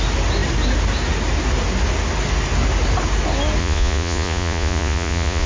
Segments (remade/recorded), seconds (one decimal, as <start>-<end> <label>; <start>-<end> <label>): 0.0-3.6 recorded; 3.6-5.5 remade

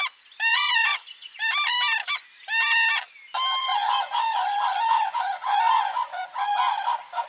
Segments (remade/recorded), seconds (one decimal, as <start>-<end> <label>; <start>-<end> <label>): 0.0-0.5 recorded; 0.5-1.4 remade; 1.4-3.6 recorded; 3.6-6.6 remade; 6.6-7.3 recorded

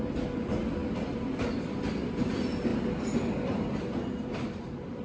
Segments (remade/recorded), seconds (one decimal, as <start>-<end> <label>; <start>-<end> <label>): 0.0-5.0 recorded

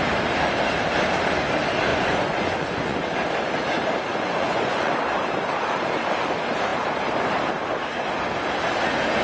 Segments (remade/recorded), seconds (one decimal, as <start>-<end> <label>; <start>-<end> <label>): 0.0-1.9 recorded; 1.9-3.0 remade; 3.0-4.1 recorded; 4.1-4.9 remade; 4.9-9.2 recorded

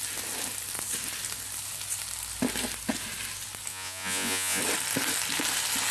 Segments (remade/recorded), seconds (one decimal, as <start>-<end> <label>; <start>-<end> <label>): 0.0-3.7 recorded; 3.7-4.6 remade; 4.6-5.9 recorded

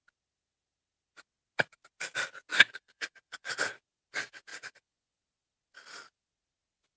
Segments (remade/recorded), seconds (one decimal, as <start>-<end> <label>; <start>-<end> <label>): 0.0-2.5 recorded; 2.5-3.6 remade; 3.6-4.5 recorded; 4.5-5.2 remade; 5.2-7.0 recorded

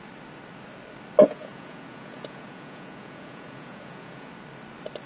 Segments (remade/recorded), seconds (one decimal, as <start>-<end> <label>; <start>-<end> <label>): 0.0-1.2 recorded; 1.2-4.3 remade; 4.3-5.1 recorded

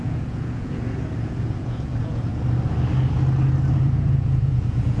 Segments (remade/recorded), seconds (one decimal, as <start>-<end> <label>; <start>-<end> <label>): 0.0-2.3 remade; 2.3-3.7 recorded; 3.7-5.0 remade